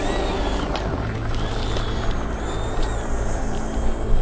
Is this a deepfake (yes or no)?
no